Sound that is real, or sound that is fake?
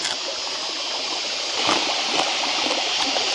real